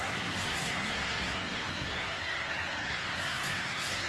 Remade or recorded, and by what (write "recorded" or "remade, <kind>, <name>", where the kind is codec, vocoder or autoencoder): remade, codec, SNAC